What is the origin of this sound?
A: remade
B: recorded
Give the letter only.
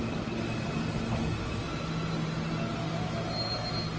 B